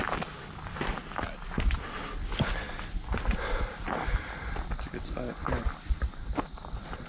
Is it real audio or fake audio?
real